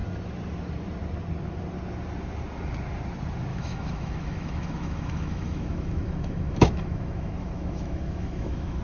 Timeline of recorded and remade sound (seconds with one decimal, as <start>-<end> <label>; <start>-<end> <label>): 0.0-3.5 recorded; 3.5-8.8 remade